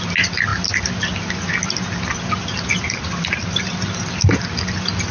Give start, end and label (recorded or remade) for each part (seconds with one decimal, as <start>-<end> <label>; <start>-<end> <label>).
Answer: 0.0-5.1 recorded